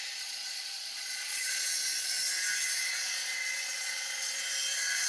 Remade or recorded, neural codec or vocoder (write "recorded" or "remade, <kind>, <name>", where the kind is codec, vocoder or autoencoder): remade, vocoder, Vocos